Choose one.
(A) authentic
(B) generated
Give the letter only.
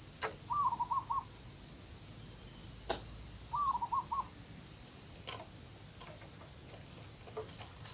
A